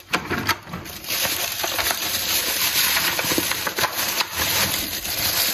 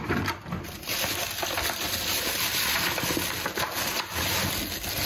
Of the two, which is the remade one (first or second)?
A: first